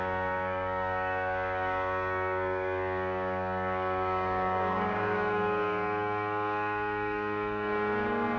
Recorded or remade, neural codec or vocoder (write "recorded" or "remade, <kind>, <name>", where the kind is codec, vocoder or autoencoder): remade, codec, DAC